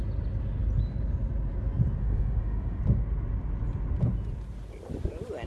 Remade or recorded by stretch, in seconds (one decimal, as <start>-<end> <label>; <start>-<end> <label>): 0.0-2.0 recorded; 2.0-2.8 remade; 2.8-5.5 recorded